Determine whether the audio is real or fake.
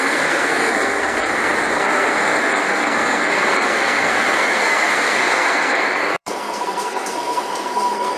fake